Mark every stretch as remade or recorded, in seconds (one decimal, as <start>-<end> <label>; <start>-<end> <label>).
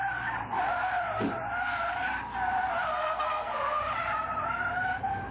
0.0-2.9 recorded; 2.9-3.8 remade; 3.8-5.3 recorded